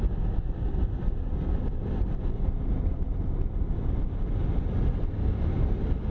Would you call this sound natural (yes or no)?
yes